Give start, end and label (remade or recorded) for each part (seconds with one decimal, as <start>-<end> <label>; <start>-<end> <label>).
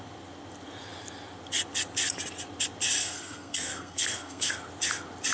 0.0-3.0 recorded; 3.0-4.5 remade; 4.5-5.3 recorded